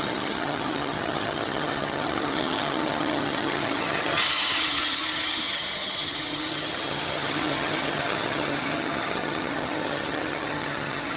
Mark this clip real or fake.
fake